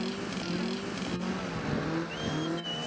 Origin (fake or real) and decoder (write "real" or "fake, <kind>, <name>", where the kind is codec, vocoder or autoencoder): real